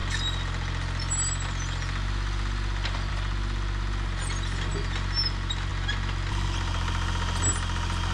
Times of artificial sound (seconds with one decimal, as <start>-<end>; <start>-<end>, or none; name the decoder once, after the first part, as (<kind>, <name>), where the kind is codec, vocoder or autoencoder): none